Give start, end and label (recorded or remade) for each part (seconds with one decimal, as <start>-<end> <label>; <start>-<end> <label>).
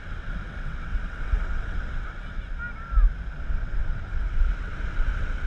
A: 0.0-2.4 remade; 2.4-3.4 recorded; 3.4-5.5 remade